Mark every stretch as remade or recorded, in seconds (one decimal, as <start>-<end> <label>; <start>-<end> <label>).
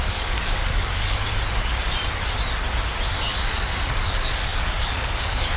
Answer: 0.0-1.3 remade; 1.3-3.2 recorded; 3.2-5.6 remade